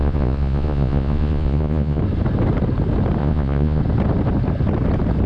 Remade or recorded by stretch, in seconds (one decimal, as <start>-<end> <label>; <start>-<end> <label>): 0.0-2.0 remade; 2.0-3.2 recorded; 3.2-3.8 remade; 3.8-5.3 recorded